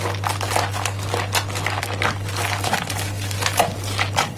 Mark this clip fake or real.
real